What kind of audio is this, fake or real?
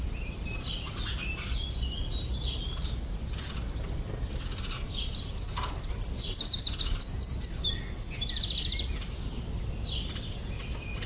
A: real